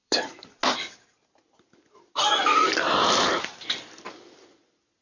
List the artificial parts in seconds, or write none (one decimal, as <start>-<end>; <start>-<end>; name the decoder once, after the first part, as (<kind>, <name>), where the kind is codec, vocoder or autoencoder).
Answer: 0.0-0.5 (vocoder, BigVGAN v2)